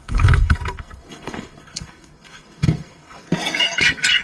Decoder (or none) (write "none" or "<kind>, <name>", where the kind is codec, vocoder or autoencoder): codec, SNAC